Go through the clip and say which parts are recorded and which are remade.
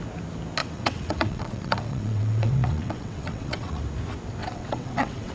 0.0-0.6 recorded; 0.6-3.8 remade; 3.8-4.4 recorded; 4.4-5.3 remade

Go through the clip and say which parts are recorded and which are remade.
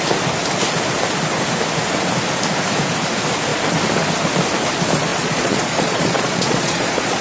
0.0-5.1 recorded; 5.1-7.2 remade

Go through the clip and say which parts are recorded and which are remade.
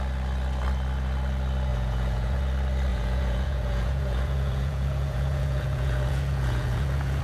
0.0-1.7 recorded; 1.7-2.4 remade; 2.4-2.9 recorded; 2.9-7.2 remade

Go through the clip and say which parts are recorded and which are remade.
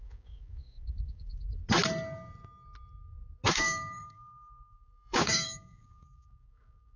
0.0-1.6 remade; 1.6-3.5 recorded; 3.5-7.0 remade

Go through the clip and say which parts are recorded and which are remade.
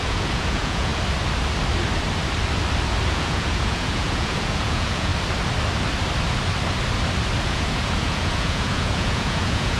0.0-0.9 remade; 0.9-3.1 recorded; 3.1-5.1 remade; 5.1-7.4 recorded; 7.4-9.8 remade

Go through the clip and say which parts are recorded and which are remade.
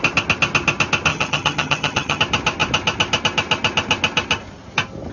0.0-1.1 recorded; 1.1-2.2 remade; 2.2-5.1 recorded